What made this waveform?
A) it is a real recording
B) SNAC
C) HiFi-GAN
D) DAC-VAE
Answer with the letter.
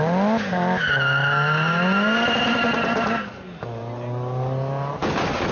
A